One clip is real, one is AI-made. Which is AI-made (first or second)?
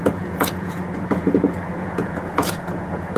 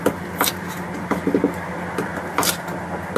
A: first